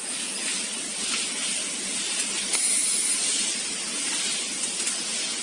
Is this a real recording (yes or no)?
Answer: yes